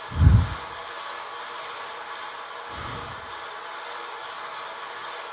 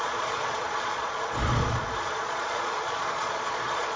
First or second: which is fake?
second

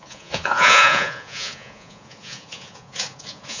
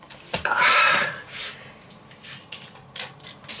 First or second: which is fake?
first